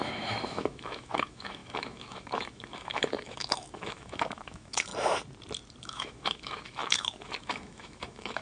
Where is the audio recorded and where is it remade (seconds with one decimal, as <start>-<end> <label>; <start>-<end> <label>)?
0.0-4.9 remade; 4.9-5.8 recorded; 5.8-8.4 remade